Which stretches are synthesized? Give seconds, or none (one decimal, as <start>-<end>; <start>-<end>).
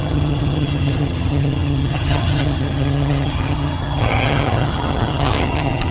0.0-5.9